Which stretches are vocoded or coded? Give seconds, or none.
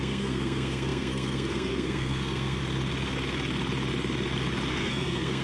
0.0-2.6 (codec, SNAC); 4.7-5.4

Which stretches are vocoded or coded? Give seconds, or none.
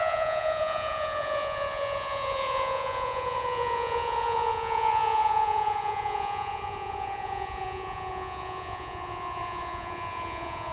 0.0-10.7 (vocoder, Vocos)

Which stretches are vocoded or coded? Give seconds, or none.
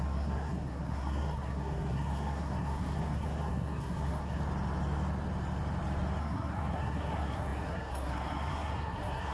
0.0-4.4 (codec, SNAC); 6.2-9.3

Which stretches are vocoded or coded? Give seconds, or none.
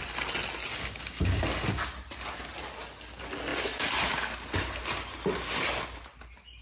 0.7-1.4 (codec, DAC)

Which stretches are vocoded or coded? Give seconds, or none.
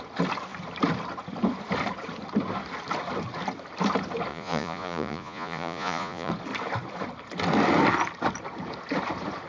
4.3-6.3 (vocoder, Vocos)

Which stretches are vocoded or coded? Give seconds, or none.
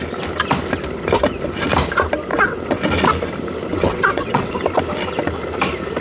2.3-2.9 (vocoder, WaveNeXt); 3.7-4.5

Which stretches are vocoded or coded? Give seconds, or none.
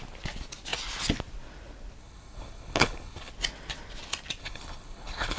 2.0-3.3 (codec, HILCodec); 4.4-5.4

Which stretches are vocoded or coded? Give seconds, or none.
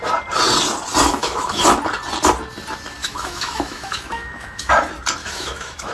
1.1-1.6 (autoencoder, DAC-VAE); 3.0-4.7; 5.2-5.9